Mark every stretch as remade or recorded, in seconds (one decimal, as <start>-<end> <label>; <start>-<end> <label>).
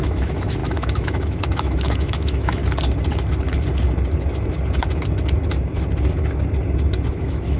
0.0-2.6 remade; 2.6-7.1 recorded; 7.1-7.6 remade